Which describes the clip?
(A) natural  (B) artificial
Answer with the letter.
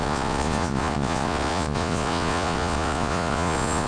B